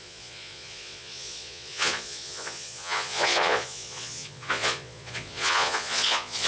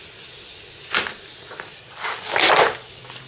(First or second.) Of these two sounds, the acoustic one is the second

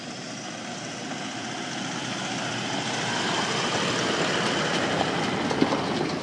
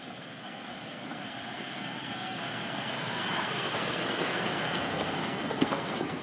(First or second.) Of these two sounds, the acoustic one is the first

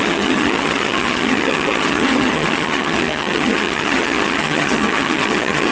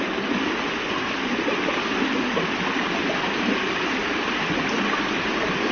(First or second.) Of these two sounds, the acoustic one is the second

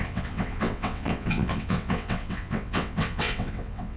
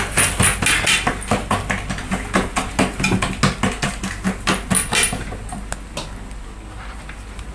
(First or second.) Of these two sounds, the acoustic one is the second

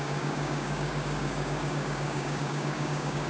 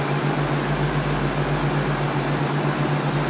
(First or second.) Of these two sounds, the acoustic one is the second